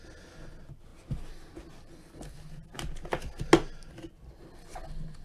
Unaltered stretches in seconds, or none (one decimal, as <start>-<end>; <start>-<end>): 0.0-5.2